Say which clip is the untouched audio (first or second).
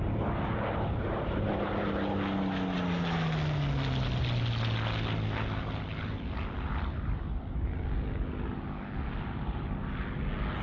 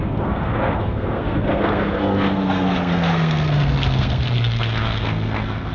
first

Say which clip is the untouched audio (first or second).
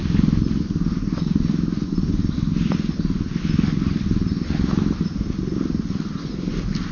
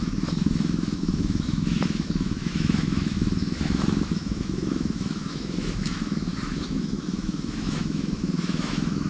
first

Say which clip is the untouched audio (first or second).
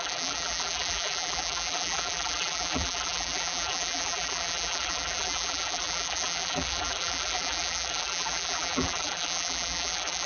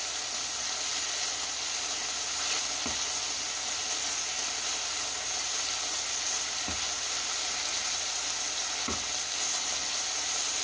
second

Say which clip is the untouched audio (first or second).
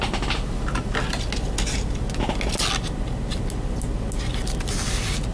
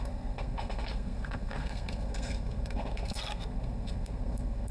first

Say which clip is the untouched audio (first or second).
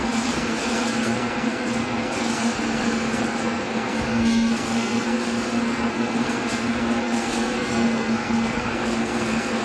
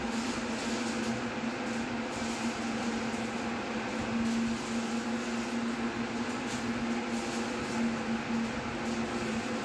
second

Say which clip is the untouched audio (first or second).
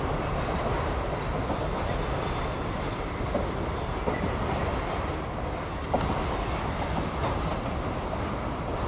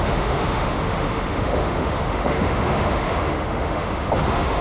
first